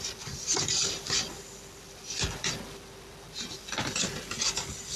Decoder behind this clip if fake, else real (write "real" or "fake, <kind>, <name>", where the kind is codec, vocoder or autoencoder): fake, vocoder, BigVGAN v2